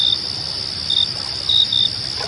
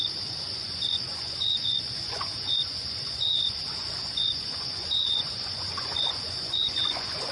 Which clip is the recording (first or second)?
first